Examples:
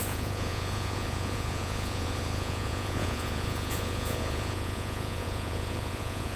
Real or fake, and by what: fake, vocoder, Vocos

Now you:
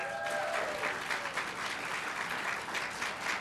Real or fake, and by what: real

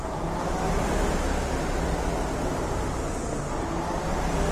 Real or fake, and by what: real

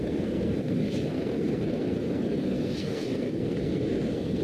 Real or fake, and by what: fake, codec, SNAC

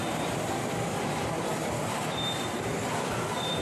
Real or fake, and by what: fake, vocoder, BigVGAN v2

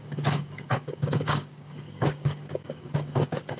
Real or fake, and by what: fake, codec, DAC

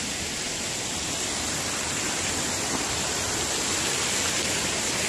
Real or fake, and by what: real